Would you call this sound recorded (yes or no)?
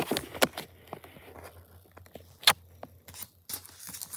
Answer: yes